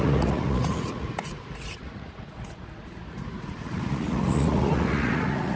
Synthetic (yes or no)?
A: yes